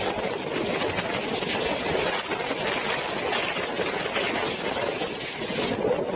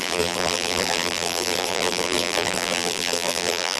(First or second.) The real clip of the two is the first